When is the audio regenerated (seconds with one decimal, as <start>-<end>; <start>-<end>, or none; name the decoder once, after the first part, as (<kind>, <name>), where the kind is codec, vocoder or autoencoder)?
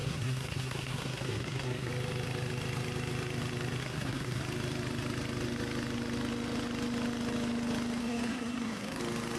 0.0-1.9 (codec, SNAC); 3.8-4.4; 8.0-9.0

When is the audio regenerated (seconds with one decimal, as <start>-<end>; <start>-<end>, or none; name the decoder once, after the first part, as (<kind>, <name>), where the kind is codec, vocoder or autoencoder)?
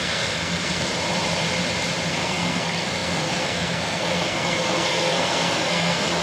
0.0-0.9 (codec, SNAC); 2.1-6.2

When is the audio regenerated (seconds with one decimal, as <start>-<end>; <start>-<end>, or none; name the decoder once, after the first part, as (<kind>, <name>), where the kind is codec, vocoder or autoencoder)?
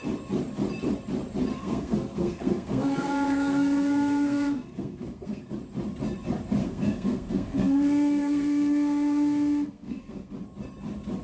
1.5-5.5 (codec, SNAC); 6.6-10.3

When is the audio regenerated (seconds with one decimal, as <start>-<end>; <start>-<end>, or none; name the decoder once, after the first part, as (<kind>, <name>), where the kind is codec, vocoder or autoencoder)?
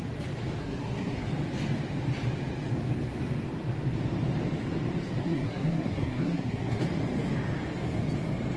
0.6-1.3 (codec, SNAC); 5.2-6.8